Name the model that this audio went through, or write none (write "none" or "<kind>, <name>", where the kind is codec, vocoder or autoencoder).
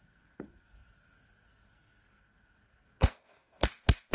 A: codec, SNAC